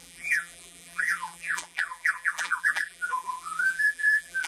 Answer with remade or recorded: remade